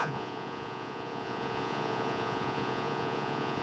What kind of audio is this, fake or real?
fake